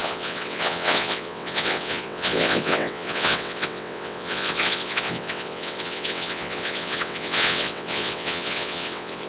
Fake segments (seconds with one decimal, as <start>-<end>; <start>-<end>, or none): 0.0-9.3